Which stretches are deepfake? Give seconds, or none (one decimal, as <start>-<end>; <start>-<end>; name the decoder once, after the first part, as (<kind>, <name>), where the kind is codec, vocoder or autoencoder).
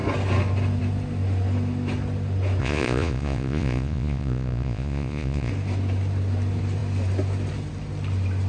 2.6-5.5 (vocoder, Vocos)